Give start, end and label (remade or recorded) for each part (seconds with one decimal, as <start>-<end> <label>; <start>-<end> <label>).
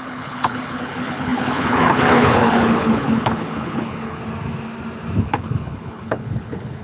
0.0-4.2 remade; 4.2-5.2 recorded; 5.2-6.8 remade